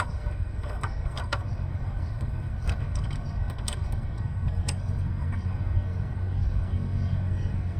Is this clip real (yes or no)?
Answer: no